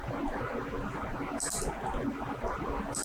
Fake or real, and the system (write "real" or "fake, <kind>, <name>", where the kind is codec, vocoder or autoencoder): real